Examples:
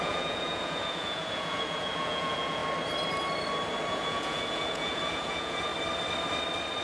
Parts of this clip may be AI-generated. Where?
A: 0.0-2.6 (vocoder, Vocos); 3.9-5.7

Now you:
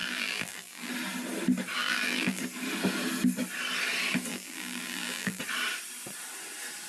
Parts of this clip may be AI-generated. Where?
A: 0.0-0.9 (vocoder, BigVGAN v2); 1.8-2.4; 4.3-5.4

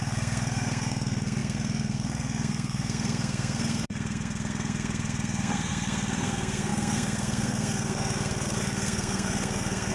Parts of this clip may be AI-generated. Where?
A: 0.0-9.9 (codec, SNAC)

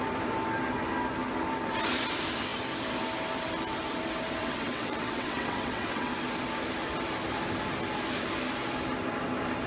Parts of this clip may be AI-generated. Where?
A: 4.4-6.1 (vocoder, WaveNeXt)

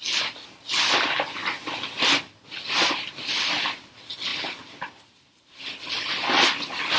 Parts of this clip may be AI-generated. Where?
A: none

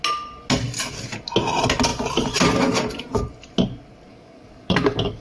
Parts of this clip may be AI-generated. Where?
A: 4.1-5.2 (codec, DAC)

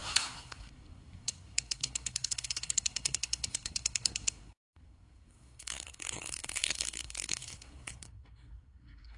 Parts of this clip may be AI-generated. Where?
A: 0.0-9.2 (codec, SNAC)